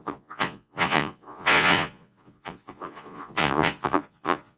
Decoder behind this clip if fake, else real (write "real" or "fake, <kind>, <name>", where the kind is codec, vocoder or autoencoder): fake, vocoder, Vocos